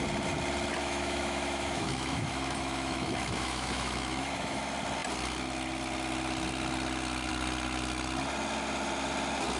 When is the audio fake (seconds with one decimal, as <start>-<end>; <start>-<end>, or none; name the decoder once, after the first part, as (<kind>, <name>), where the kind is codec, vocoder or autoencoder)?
0.8-4.6 (autoencoder, DAC-VAE)